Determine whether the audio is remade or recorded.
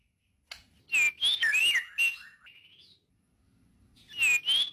recorded